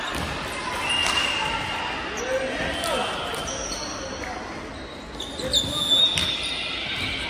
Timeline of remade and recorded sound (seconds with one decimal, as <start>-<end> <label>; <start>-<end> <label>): 0.0-1.0 recorded; 1.0-1.8 remade; 1.8-6.2 recorded; 6.2-6.7 remade; 6.7-7.3 recorded